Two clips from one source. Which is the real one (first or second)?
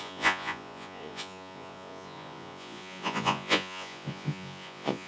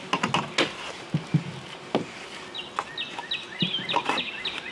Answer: second